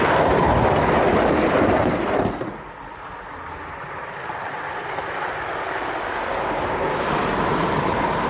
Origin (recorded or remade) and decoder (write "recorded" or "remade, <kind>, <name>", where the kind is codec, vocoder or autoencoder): recorded